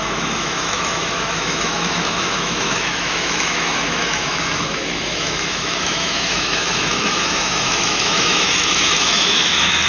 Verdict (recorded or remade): remade